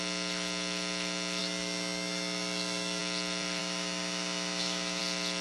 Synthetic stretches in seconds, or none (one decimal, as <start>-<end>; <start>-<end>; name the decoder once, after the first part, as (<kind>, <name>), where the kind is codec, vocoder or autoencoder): 1.4-3.0 (autoencoder, DAC-VAE); 3.6-5.0